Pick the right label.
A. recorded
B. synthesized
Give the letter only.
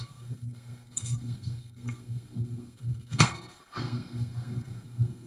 B